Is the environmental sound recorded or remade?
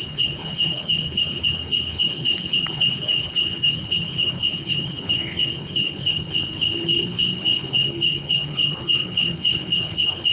remade